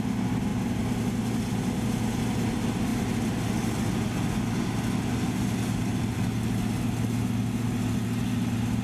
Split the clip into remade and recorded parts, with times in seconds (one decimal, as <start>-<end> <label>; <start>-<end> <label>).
0.0-8.8 recorded